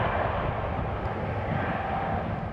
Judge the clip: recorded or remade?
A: recorded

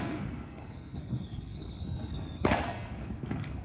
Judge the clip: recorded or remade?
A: remade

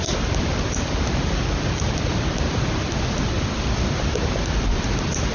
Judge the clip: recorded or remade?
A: recorded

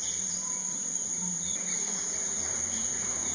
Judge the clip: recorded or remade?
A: remade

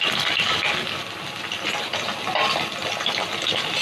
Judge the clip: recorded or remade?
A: recorded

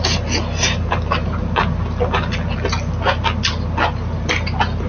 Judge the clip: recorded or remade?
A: recorded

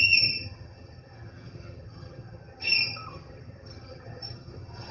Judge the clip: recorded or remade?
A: remade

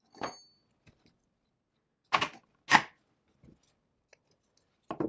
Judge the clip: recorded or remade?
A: recorded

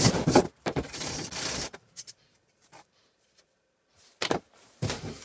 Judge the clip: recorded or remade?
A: remade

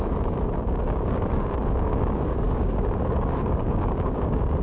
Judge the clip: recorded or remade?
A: remade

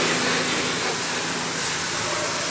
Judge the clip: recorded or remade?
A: recorded